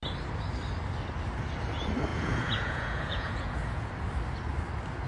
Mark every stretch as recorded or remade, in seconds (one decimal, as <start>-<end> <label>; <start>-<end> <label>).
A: 0.0-2.1 recorded; 2.1-3.9 remade; 3.9-5.1 recorded